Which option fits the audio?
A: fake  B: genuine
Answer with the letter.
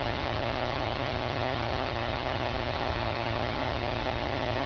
A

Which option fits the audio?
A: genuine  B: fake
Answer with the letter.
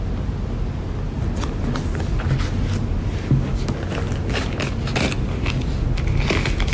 A